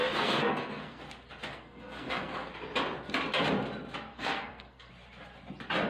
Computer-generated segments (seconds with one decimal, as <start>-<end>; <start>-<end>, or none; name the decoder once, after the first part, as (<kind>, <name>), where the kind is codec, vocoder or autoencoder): 0.0-1.0 (codec, SNAC); 1.5-2.5; 4.1-4.9